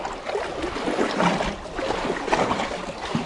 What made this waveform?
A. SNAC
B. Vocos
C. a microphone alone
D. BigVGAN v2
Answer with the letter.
C